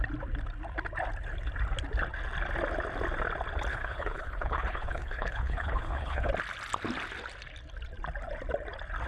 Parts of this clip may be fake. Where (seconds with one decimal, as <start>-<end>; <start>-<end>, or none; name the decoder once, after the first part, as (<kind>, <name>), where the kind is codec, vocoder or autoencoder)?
3.7-6.3 (codec, HILCodec)